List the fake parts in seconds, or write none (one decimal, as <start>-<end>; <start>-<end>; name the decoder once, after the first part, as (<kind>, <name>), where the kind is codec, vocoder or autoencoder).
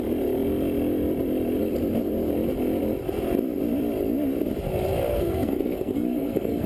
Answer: 5.1-6.7 (codec, SNAC)